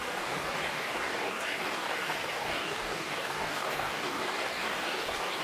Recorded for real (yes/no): no